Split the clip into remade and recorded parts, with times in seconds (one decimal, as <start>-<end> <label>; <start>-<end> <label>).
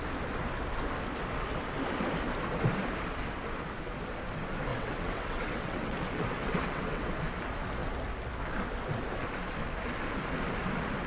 0.0-4.7 recorded; 4.7-7.1 remade; 7.1-11.1 recorded